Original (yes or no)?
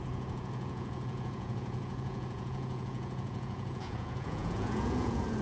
no